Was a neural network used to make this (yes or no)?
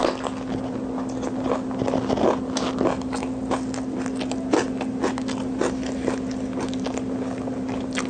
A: no